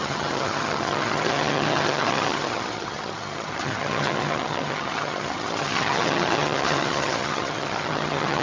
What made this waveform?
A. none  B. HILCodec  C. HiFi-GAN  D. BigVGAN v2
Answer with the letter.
C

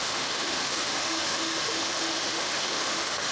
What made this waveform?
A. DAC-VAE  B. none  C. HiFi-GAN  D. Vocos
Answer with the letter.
A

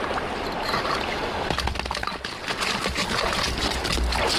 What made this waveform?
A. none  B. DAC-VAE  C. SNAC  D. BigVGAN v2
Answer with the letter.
A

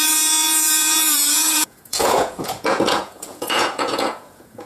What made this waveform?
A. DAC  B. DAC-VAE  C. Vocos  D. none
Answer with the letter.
C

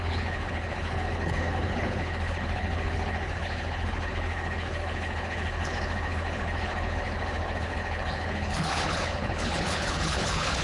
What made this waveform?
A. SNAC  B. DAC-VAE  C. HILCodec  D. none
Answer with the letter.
C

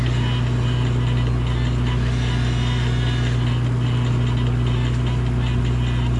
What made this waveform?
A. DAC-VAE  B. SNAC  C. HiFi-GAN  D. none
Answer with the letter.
D